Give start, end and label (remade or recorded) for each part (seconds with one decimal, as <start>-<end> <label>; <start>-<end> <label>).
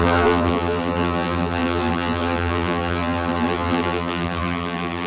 0.0-5.1 remade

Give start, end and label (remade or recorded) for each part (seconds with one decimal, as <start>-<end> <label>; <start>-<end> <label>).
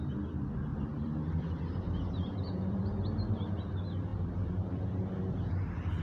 0.0-0.7 recorded; 0.7-2.8 remade; 2.8-4.1 recorded; 4.1-5.3 remade; 5.3-6.0 recorded